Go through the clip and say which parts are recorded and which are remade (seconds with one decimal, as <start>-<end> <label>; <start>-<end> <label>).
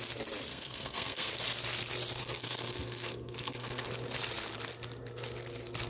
0.0-0.5 recorded; 0.5-1.3 remade; 1.3-2.2 recorded; 2.2-3.9 remade; 3.9-5.9 recorded